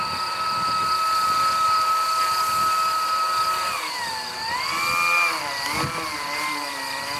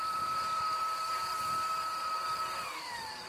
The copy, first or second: second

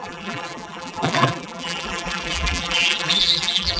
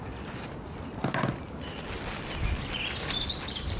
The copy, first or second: first